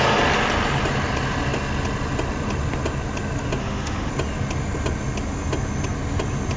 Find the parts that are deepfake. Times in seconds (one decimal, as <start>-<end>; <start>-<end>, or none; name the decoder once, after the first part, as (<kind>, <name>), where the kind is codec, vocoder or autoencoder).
3.6-4.1 (autoencoder, DAC-VAE)